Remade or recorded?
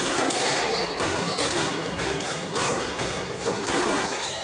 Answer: remade